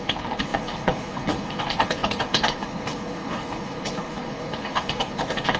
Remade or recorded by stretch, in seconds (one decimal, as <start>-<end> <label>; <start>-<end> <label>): 0.0-5.6 remade